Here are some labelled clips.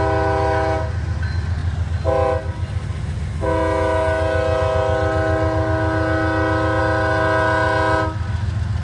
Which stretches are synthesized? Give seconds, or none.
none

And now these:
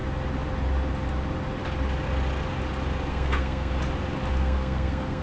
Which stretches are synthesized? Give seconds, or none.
3.1-3.7 (codec, SNAC); 4.3-5.2

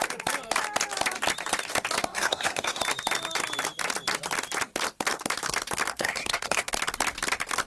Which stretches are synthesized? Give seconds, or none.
2.1-2.8 (codec, SNAC); 5.9-6.7

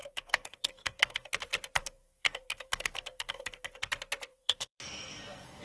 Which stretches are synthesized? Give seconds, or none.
0.0-1.3 (codec, SNAC); 1.8-3.8; 4.3-5.6

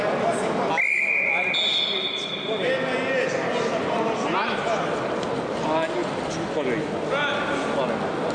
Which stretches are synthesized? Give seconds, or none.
none

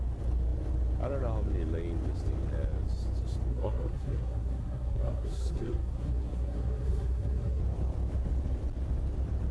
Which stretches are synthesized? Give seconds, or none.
3.5-7.6 (codec, SNAC)